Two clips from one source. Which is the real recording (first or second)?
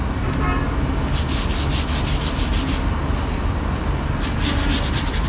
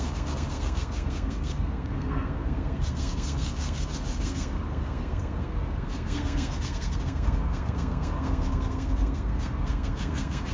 first